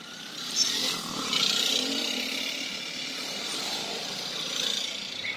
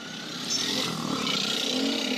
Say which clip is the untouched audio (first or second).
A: second